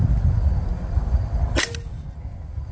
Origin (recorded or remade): recorded